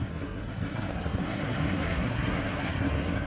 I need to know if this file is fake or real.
fake